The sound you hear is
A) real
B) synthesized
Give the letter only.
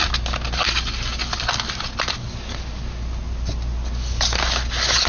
A